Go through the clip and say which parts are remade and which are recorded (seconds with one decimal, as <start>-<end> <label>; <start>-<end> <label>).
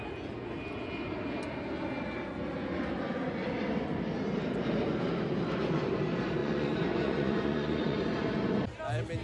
0.0-6.4 recorded; 6.4-8.0 remade; 8.0-9.2 recorded